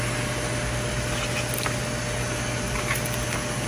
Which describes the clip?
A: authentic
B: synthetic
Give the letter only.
A